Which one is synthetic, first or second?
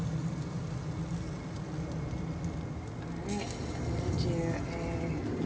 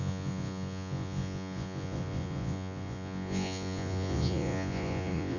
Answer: second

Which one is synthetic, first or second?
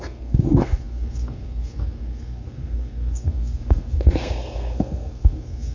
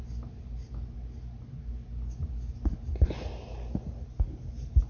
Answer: first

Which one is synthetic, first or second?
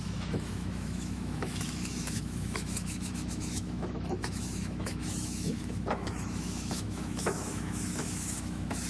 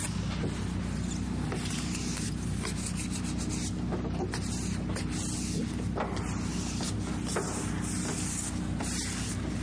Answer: first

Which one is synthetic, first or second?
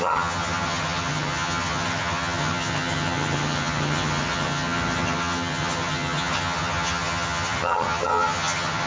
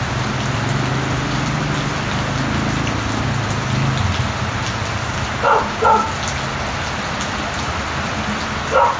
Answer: first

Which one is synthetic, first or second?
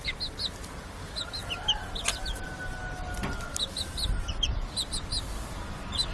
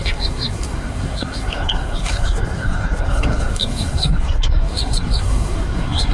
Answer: second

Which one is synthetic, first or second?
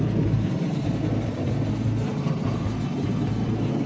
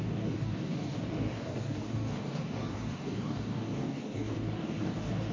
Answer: second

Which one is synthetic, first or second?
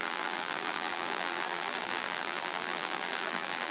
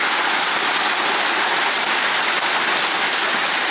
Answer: first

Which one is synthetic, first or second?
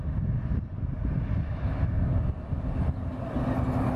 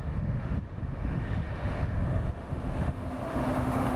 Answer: second